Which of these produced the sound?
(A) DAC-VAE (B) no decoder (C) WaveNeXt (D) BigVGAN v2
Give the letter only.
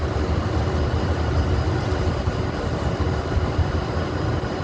B